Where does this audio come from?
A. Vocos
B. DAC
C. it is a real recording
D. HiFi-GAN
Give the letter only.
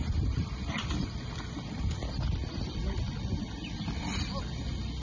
C